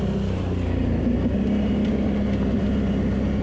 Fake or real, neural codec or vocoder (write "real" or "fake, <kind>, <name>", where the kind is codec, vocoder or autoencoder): real